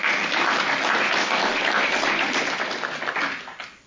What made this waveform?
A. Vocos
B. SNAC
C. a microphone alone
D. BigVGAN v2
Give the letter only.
C